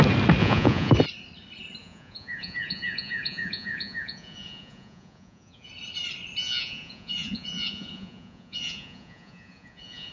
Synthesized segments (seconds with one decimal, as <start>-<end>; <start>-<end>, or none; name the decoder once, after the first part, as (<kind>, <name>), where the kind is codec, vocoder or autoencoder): 0.4-0.9 (vocoder, Vocos); 1.8-5.7; 6.4-10.1